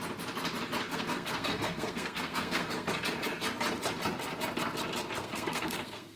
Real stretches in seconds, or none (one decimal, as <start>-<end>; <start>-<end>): 0.0-0.9; 2.9-5.2